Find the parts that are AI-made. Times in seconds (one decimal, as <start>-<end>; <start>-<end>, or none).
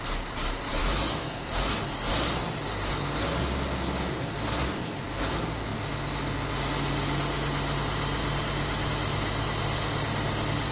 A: 0.8-1.5